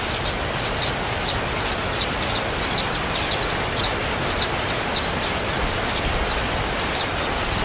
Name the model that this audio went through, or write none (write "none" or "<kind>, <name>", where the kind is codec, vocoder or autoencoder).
none